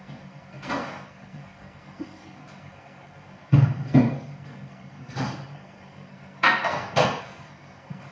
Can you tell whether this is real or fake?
fake